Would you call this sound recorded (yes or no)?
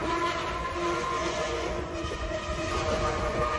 no